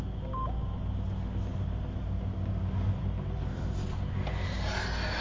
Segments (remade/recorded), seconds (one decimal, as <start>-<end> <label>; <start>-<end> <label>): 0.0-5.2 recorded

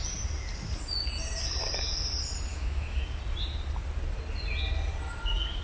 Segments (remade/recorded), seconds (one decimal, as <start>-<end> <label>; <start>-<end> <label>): 0.0-2.5 recorded; 2.5-3.0 remade; 3.0-5.6 recorded

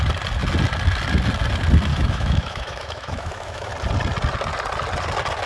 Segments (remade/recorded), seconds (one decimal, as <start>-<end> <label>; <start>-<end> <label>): 0.0-1.9 recorded; 1.9-3.7 remade; 3.7-5.5 recorded

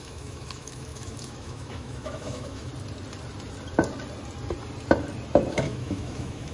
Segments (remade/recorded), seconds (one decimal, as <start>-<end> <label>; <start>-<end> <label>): 0.0-2.7 remade; 2.7-5.5 recorded; 5.5-6.5 remade

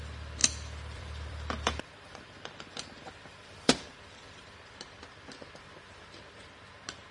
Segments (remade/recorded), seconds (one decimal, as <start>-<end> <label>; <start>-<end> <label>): 0.0-0.4 recorded; 0.4-4.7 remade; 4.7-7.1 recorded

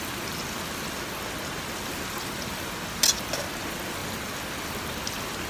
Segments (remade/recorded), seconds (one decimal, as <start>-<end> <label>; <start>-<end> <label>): 0.0-5.5 recorded

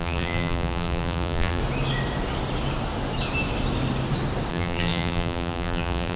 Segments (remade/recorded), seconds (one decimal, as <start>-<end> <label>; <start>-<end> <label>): 0.0-1.6 remade; 1.6-4.5 recorded; 4.5-6.2 remade